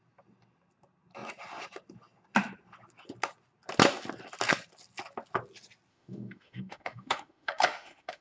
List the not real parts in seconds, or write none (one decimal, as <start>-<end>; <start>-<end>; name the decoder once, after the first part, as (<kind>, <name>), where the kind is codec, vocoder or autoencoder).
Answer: 5.9-8.2 (autoencoder, DAC-VAE)